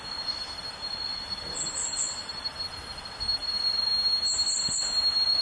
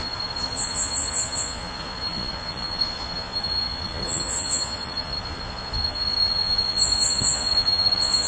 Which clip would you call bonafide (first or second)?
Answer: first